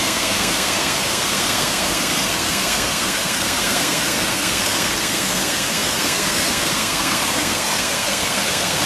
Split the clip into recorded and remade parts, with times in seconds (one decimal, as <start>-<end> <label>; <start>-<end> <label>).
0.0-8.9 remade

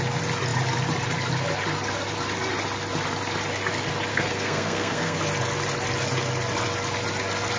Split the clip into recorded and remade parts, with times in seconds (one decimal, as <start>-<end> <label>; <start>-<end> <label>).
0.0-4.1 recorded; 4.1-5.2 remade; 5.2-7.6 recorded

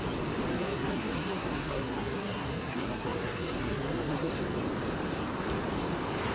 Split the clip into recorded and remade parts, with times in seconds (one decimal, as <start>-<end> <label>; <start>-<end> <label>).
0.0-0.5 recorded; 0.5-4.3 remade; 4.3-6.3 recorded